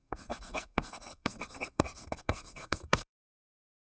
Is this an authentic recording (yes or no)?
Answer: no